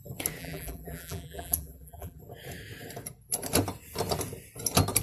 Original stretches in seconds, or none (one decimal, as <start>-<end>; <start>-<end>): 0.0-0.4; 2.2-5.0